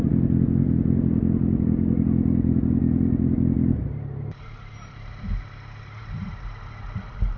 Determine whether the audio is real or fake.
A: real